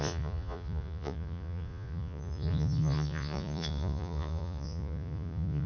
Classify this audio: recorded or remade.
remade